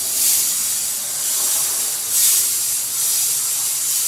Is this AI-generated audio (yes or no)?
no